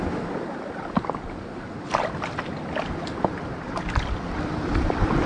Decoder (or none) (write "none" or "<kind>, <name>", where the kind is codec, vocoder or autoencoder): none